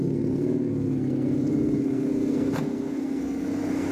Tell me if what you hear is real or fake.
fake